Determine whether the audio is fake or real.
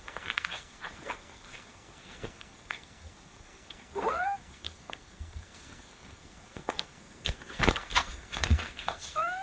fake